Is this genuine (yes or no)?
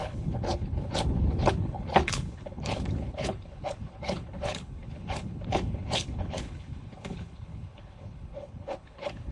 no